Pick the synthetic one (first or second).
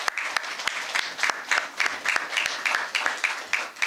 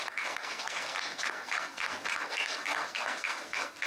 second